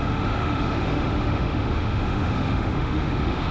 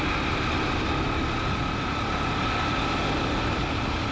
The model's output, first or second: first